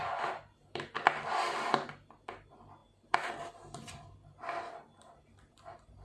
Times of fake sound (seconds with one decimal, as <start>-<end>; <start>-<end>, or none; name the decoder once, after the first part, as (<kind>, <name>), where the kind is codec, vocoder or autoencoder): none